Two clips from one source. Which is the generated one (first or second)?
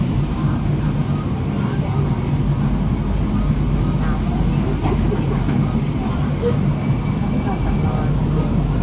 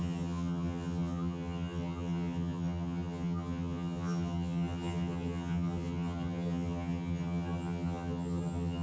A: second